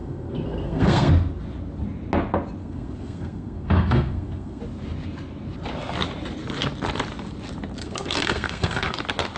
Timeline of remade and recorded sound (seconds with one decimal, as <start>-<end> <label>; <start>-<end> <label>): 0.0-1.1 remade; 1.1-2.6 recorded; 2.6-4.6 remade; 4.6-7.8 recorded; 7.8-9.0 remade; 9.0-9.4 recorded